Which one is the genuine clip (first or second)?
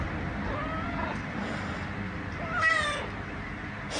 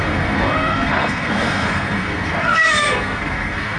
first